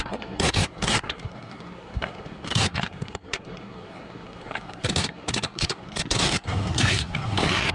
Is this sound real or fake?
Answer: fake